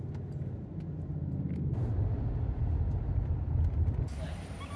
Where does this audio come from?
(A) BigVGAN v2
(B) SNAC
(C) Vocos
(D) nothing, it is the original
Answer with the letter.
D